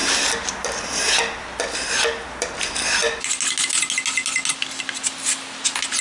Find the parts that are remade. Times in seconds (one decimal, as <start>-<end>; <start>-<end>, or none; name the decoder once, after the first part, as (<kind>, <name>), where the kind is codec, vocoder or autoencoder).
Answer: none